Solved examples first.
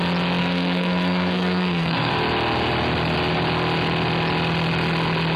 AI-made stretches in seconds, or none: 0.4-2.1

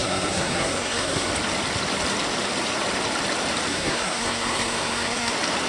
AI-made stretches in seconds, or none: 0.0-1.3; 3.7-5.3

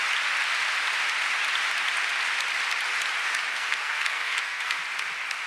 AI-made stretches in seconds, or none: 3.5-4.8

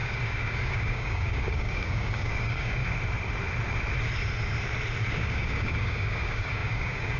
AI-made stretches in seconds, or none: 0.0-2.8; 5.1-7.2